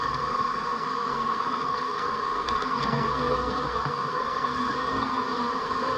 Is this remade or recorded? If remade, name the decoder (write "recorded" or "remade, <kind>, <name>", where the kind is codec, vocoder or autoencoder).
remade, codec, SNAC